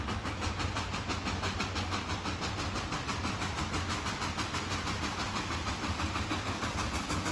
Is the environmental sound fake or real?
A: real